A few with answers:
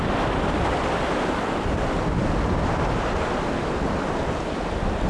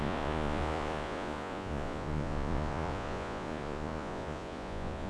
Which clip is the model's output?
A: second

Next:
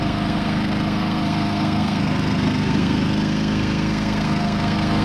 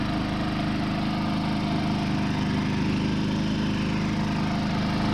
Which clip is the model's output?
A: first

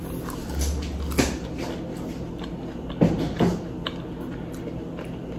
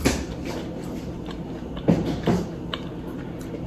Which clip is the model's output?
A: second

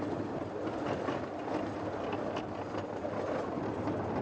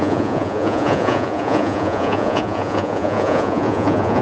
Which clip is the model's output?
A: second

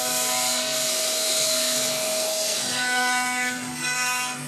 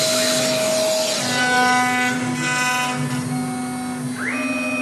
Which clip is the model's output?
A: first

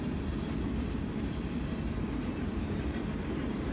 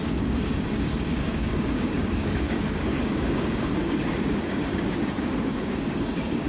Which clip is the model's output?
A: second